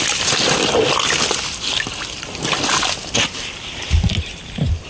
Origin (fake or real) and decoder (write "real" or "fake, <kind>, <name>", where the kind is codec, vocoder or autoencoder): real